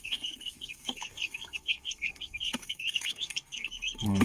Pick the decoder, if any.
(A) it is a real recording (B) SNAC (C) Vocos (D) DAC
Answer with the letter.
B